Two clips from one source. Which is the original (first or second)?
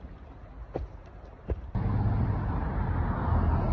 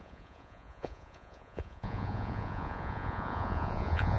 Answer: first